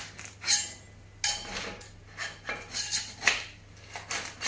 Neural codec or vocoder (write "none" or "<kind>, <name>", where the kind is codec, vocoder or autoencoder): none